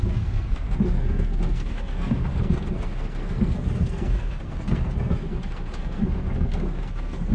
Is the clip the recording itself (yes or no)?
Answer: no